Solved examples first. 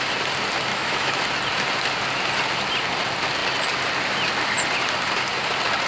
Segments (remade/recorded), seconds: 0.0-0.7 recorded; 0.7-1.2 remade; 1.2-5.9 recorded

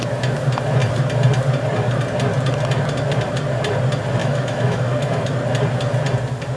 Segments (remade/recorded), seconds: 0.0-4.2 recorded; 4.2-5.2 remade; 5.2-6.6 recorded

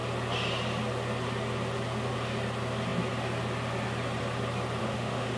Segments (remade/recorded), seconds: 0.0-4.8 recorded; 4.8-5.4 remade

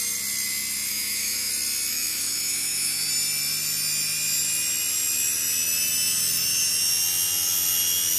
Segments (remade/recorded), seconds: 0.0-0.9 recorded; 0.9-1.5 remade; 1.5-1.9 recorded; 1.9-3.1 remade; 3.1-8.2 recorded

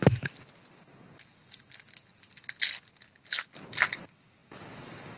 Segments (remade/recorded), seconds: 0.0-5.2 recorded

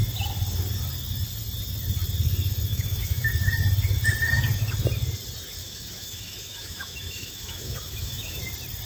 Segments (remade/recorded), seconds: 0.0-2.7 recorded; 2.7-3.3 remade; 3.3-5.6 recorded; 5.6-8.4 remade; 8.4-8.9 recorded

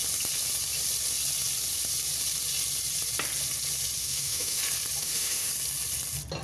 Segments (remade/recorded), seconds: 0.0-4.0 recorded; 4.0-4.6 remade; 4.6-5.0 recorded; 5.0-5.5 remade; 5.5-6.4 recorded